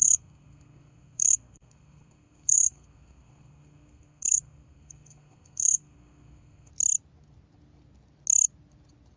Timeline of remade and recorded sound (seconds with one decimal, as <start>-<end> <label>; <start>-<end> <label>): 0.0-6.7 remade; 6.7-9.2 recorded